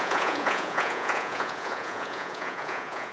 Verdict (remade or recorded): remade